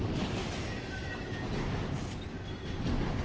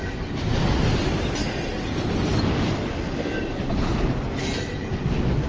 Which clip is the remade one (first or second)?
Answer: first